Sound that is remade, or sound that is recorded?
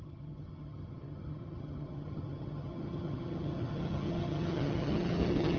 remade